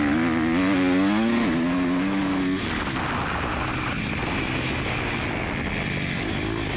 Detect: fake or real real